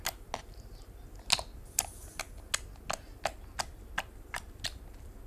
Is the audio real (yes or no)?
yes